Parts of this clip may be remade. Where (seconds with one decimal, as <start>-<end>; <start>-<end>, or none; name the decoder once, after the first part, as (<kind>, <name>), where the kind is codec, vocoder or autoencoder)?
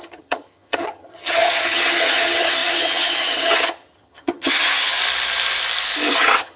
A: 0.0-5.0 (vocoder, HiFi-GAN); 6.1-6.6